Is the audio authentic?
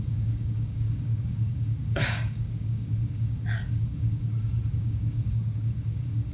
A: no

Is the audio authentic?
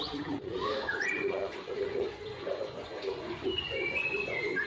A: no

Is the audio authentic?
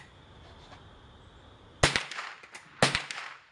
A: yes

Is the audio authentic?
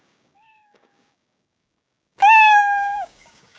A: no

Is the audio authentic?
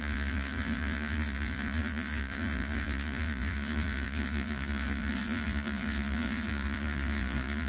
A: no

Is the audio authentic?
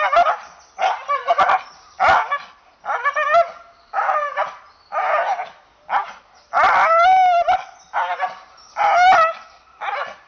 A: yes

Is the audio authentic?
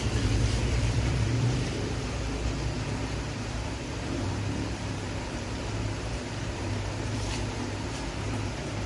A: no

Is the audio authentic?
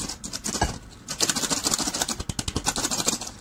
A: yes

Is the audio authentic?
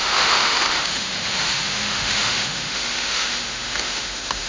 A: no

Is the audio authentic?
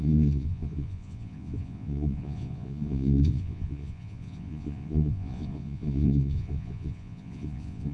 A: no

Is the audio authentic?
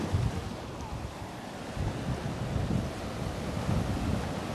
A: yes